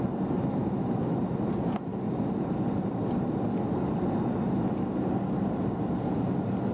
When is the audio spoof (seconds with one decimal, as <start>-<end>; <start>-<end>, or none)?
0.6-1.2